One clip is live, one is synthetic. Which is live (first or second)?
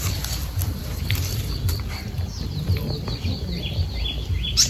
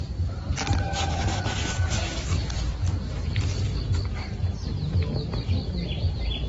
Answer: second